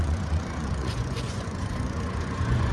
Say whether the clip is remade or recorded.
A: remade